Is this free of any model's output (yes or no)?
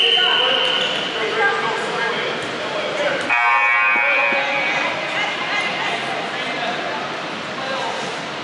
yes